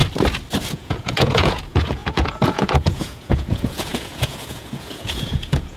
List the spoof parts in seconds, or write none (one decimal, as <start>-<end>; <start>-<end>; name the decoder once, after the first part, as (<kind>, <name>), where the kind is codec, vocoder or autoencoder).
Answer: 0.7-5.8 (vocoder, Vocos)